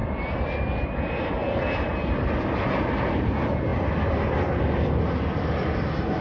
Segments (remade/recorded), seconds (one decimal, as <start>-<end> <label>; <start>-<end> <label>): 0.0-6.2 recorded